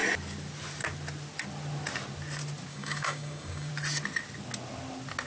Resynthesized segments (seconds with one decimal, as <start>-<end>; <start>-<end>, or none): 2.7-3.7